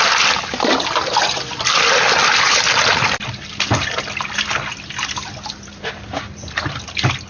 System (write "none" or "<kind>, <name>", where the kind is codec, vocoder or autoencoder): none